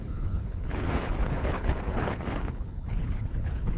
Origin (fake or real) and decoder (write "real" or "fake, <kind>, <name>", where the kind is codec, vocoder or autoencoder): fake, codec, HILCodec